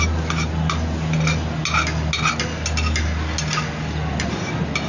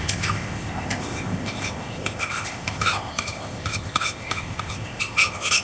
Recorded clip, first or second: first